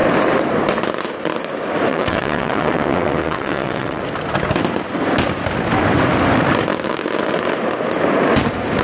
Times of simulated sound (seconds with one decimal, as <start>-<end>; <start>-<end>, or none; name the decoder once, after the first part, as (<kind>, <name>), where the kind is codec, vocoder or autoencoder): 1.9-4.0 (vocoder, WaveNeXt)